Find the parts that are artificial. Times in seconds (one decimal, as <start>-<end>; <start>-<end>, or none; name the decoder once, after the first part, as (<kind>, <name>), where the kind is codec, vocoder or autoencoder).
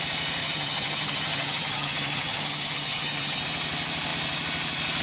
0.4-3.4 (vocoder, HiFi-GAN)